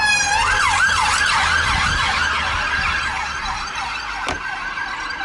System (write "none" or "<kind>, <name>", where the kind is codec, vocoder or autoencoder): none